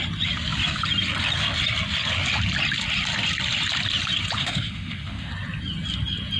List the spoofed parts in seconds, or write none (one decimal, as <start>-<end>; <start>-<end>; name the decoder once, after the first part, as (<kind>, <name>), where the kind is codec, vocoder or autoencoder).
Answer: 4.4-5.3 (autoencoder, DAC-VAE)